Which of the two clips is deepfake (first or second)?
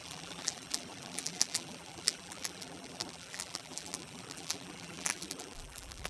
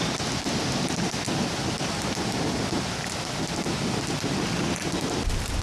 first